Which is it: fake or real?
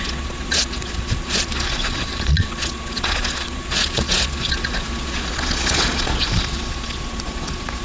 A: fake